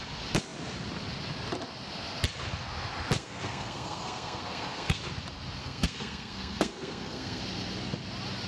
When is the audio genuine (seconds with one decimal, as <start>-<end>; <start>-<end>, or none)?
0.0-3.2; 5.0-5.6; 7.4-8.5